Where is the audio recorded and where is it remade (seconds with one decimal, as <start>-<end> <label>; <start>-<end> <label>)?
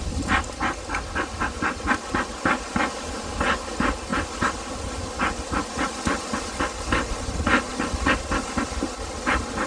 0.0-9.7 recorded